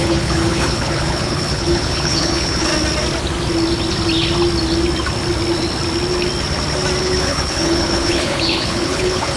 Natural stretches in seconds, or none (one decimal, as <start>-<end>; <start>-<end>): 2.7-7.0